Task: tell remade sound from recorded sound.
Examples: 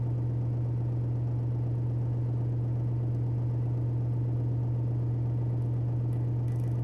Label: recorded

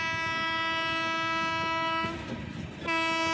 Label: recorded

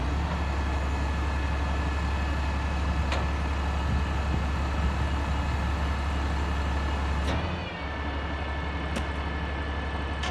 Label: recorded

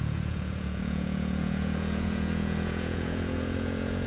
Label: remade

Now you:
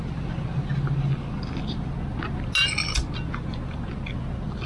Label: recorded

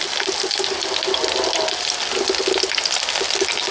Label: recorded